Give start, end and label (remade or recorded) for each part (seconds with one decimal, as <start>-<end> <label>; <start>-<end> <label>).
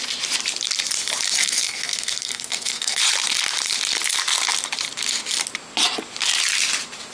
0.0-1.4 recorded; 1.4-3.0 remade; 3.0-7.1 recorded